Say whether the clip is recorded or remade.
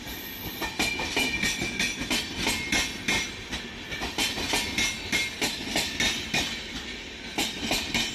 recorded